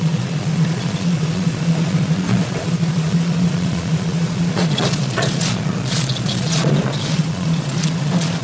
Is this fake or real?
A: fake